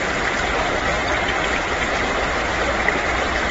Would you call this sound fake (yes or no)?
no